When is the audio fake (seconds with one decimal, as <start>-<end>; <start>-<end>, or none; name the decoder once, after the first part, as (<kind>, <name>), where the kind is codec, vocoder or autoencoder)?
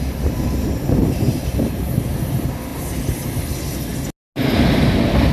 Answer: 1.0-1.8 (vocoder, BigVGAN v2)